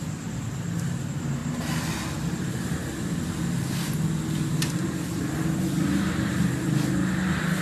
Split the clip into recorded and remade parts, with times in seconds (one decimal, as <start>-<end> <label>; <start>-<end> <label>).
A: 0.0-7.6 recorded